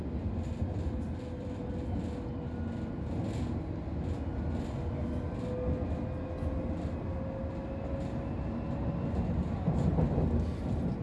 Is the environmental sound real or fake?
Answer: real